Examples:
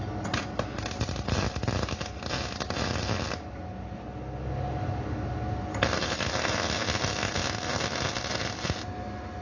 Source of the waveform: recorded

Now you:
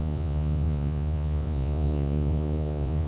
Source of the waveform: remade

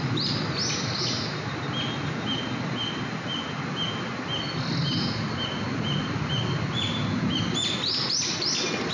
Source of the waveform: recorded